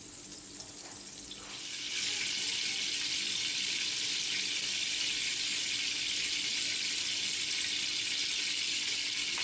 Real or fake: real